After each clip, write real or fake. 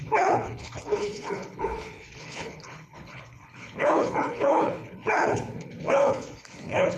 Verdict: fake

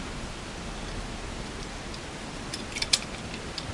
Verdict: real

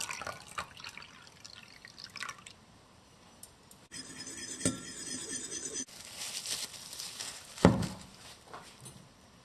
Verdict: real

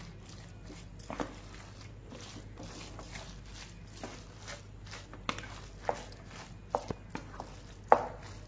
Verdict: real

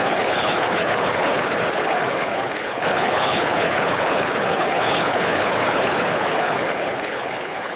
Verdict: fake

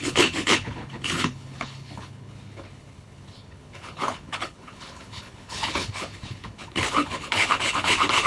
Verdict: fake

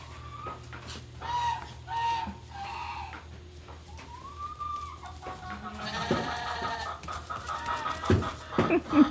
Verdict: real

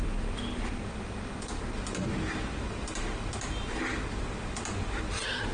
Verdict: real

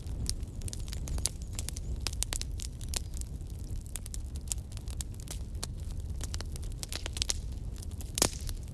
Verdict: real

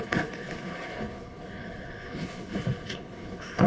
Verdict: fake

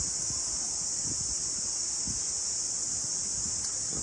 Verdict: real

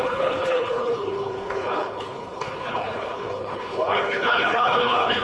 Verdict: fake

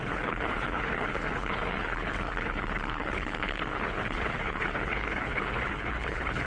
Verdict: fake